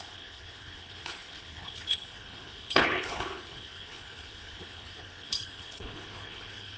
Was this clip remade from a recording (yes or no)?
yes